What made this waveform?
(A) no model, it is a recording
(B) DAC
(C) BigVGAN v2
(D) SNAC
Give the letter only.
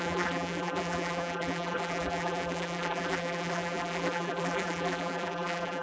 C